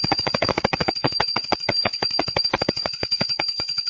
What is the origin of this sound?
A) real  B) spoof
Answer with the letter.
B